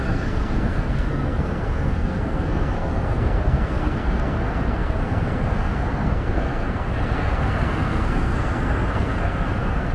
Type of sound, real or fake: fake